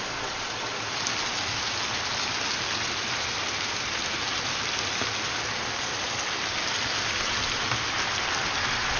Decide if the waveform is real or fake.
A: real